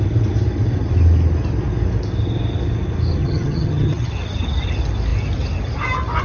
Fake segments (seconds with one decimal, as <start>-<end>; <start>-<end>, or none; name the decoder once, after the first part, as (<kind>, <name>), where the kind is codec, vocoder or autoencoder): 3.2-4.1 (vocoder, HiFi-GAN)